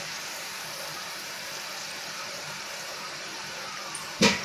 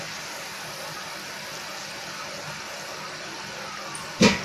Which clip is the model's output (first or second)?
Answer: first